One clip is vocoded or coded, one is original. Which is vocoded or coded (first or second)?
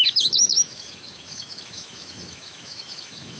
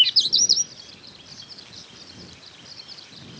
first